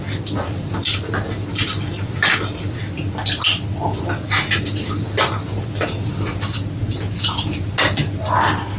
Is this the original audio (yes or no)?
yes